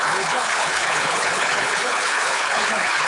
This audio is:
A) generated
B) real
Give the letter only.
A